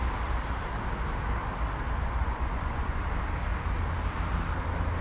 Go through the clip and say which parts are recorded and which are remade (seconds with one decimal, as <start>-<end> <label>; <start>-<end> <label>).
0.0-2.2 recorded; 2.2-3.0 remade; 3.0-5.0 recorded